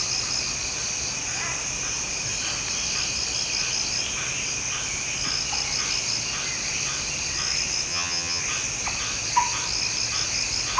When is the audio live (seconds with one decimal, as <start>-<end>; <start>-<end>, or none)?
0.0-7.9; 8.4-10.8